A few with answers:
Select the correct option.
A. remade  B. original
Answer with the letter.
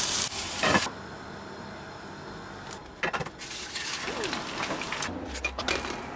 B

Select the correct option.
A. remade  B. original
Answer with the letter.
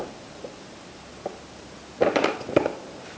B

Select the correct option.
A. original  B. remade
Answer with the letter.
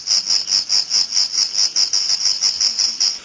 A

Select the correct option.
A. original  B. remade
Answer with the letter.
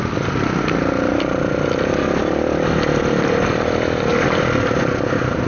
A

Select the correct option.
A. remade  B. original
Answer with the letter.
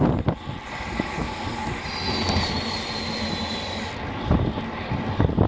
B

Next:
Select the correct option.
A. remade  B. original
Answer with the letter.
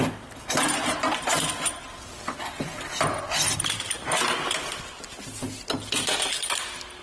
B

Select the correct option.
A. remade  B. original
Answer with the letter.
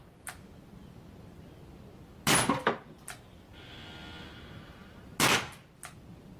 B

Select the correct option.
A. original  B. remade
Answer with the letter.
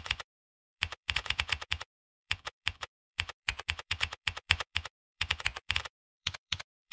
B